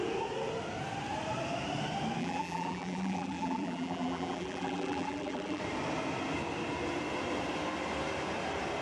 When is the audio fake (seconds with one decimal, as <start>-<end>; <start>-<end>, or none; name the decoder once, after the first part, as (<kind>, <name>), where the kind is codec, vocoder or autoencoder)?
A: 2.2-5.6 (vocoder, BigVGAN v2)